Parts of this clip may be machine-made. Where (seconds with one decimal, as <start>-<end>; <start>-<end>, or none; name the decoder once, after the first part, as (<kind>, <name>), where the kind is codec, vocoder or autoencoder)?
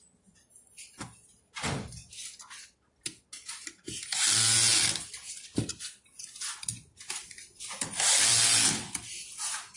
none